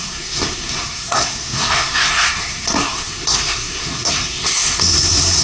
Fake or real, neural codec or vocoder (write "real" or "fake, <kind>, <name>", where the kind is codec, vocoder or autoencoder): fake, codec, SNAC